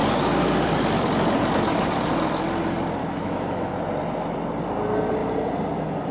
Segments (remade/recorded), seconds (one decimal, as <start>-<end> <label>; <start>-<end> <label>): 0.0-3.0 recorded; 3.0-3.7 remade; 3.7-6.1 recorded